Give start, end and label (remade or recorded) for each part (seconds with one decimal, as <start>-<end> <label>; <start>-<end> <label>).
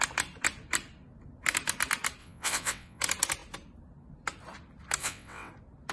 0.0-2.2 recorded; 2.2-3.0 remade; 3.0-5.0 recorded; 5.0-5.5 remade; 5.5-5.9 recorded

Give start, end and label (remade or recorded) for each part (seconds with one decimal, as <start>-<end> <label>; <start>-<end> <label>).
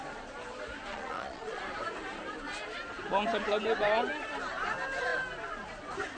0.0-0.9 recorded; 0.9-1.6 remade; 1.6-6.2 recorded